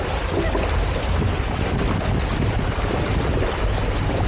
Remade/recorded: recorded